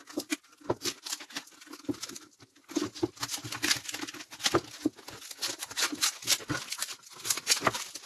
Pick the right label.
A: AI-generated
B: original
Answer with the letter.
B